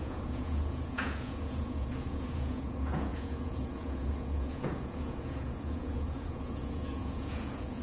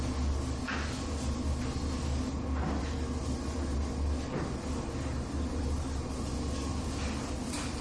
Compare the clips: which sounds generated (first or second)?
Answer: first